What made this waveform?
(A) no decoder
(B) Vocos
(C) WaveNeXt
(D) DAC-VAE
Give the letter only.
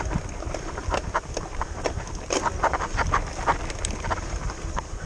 A